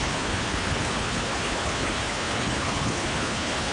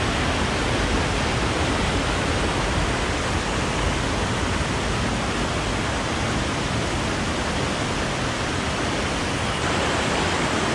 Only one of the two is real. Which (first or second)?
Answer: second